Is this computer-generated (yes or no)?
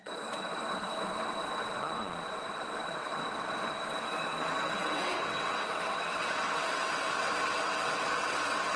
yes